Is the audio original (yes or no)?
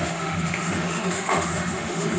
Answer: no